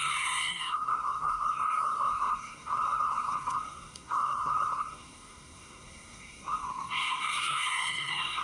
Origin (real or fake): fake